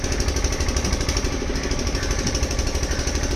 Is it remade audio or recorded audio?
recorded